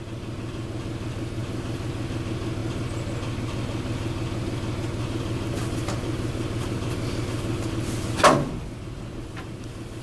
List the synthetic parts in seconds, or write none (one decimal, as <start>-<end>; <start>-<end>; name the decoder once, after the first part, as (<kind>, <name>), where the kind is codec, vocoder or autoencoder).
none